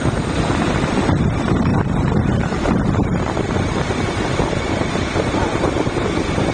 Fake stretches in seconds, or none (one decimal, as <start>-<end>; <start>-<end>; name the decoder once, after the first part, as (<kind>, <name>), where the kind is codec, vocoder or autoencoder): 1.7-5.6 (vocoder, BigVGAN v2)